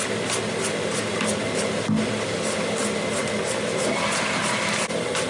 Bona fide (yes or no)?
yes